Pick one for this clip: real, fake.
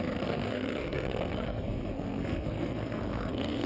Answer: fake